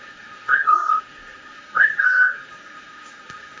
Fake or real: fake